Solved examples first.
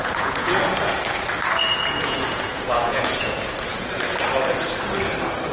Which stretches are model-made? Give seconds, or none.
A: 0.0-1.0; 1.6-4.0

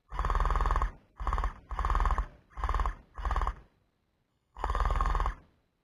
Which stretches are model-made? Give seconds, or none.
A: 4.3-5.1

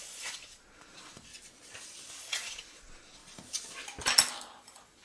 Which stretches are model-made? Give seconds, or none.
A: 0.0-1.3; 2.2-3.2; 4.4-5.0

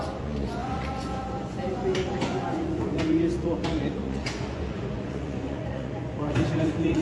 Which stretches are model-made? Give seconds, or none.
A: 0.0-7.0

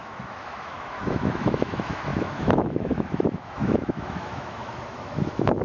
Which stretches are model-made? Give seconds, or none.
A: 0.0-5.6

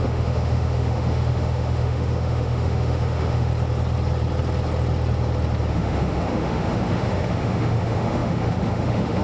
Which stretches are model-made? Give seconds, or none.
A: 0.0-3.5; 5.7-9.2